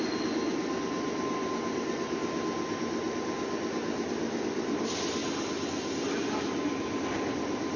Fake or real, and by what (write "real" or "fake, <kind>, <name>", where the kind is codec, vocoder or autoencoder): real